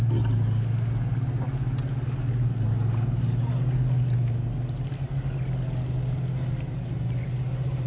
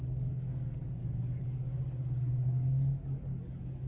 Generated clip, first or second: second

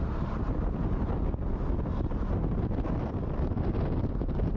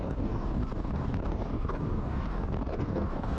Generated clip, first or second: second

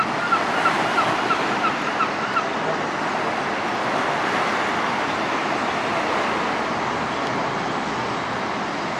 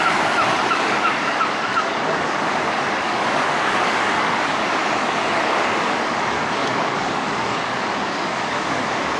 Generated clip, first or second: second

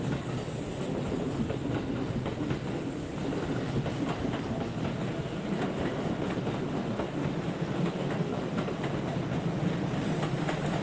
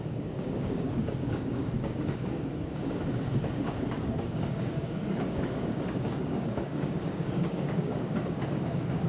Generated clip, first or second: second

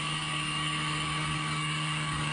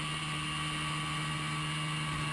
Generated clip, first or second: first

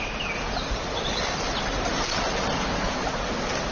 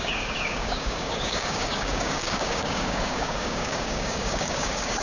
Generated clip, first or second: second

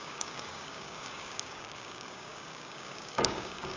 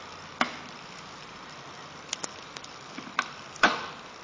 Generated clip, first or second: first